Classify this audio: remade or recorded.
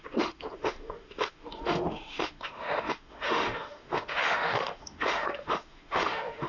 remade